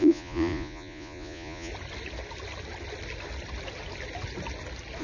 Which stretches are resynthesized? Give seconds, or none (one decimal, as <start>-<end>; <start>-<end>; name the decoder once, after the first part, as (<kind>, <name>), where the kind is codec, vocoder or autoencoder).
0.0-1.7 (vocoder, Vocos)